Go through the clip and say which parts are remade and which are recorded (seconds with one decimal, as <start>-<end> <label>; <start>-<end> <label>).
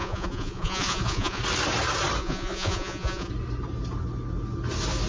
0.0-1.4 remade; 1.4-2.2 recorded; 2.2-3.3 remade; 3.3-5.1 recorded